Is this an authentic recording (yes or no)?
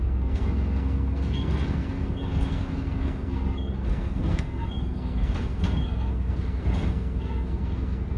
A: no